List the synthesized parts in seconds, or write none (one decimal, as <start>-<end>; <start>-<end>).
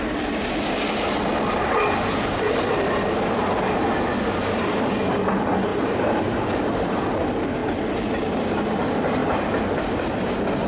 5.7-6.4